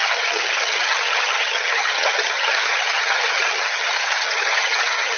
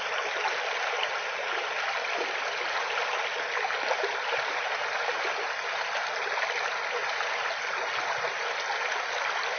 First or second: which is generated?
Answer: first